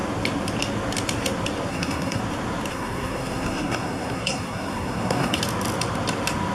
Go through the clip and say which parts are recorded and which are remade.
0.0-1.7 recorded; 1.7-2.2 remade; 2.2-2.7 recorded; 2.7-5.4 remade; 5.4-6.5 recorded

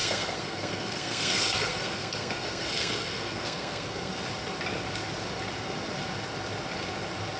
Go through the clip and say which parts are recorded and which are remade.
0.0-4.1 remade; 4.1-7.4 recorded

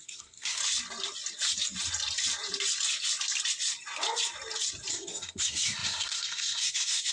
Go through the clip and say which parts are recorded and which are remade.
0.0-0.6 remade; 0.6-4.9 recorded; 4.9-7.1 remade

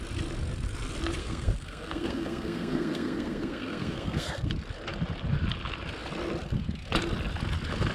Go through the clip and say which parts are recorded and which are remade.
0.0-1.2 recorded; 1.2-4.5 remade; 4.5-7.9 recorded

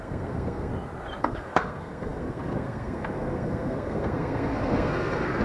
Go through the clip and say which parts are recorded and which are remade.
0.0-0.7 remade; 0.7-1.2 recorded; 1.2-5.4 remade

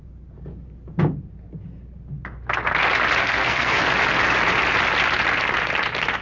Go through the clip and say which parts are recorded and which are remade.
0.0-3.2 recorded; 3.2-3.8 remade; 3.8-6.2 recorded

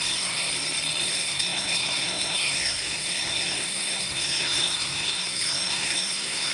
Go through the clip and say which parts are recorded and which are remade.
0.0-0.5 remade; 0.5-1.0 recorded; 1.0-6.5 remade

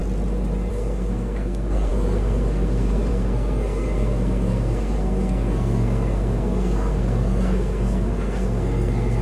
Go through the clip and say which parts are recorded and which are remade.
0.0-0.7 recorded; 0.7-9.2 remade